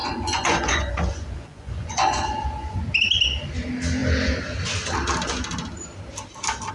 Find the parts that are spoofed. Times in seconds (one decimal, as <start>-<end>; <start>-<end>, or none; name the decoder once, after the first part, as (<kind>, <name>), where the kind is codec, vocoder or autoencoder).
0.0-2.8 (vocoder, Vocos)